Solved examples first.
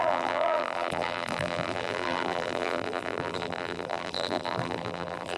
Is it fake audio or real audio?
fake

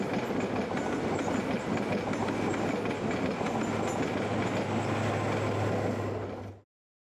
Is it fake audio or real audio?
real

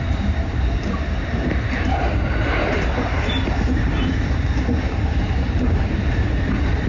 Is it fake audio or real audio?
fake